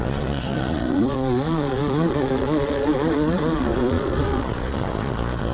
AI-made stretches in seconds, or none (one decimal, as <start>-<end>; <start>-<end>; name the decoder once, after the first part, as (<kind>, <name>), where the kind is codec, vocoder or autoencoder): 0.0-5.5 (vocoder, Vocos)